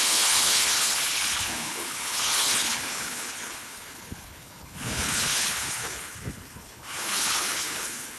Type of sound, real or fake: fake